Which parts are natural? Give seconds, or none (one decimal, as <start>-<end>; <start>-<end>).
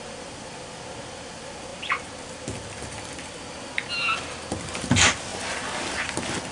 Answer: 0.0-6.5